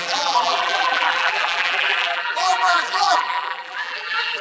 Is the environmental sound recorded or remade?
remade